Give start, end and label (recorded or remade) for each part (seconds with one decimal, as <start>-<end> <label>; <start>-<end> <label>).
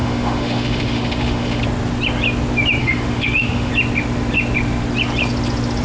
0.0-1.6 remade; 1.6-2.8 recorded; 2.8-3.7 remade; 3.7-5.8 recorded